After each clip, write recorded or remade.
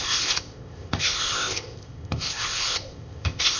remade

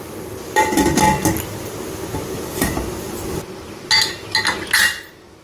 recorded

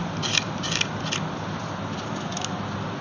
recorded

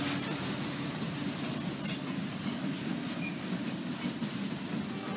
recorded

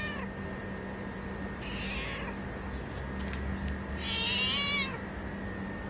recorded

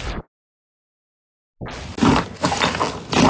recorded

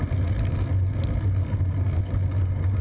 recorded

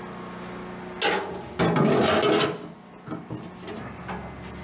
recorded